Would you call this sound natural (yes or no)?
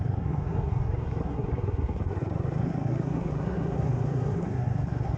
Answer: no